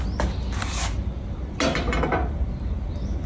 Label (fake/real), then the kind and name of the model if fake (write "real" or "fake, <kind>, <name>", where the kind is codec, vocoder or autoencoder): real